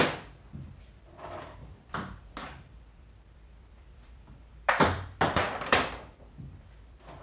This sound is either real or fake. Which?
fake